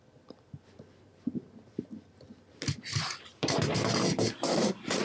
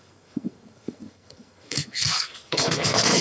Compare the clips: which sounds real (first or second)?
first